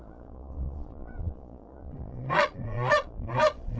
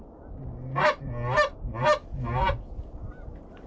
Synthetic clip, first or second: first